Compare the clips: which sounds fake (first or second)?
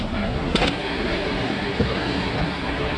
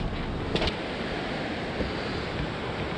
first